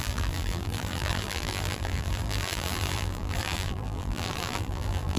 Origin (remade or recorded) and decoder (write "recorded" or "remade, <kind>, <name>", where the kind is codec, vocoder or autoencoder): remade, vocoder, BigVGAN v2